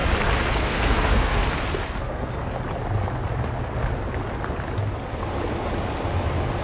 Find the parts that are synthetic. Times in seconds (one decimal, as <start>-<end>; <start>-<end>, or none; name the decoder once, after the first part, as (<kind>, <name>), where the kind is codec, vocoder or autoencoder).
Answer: 0.6-1.4 (codec, SNAC); 2.0-2.5

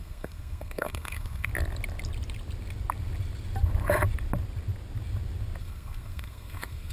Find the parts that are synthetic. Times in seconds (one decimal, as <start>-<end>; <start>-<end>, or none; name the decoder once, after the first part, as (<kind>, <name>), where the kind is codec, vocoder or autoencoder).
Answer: 0.0-1.5 (codec, SNAC); 5.6-6.9